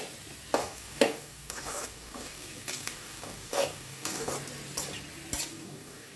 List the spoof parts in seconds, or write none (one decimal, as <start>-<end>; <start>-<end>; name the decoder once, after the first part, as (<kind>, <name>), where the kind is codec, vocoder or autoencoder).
0.6-4.3 (codec, DAC); 5.5-6.2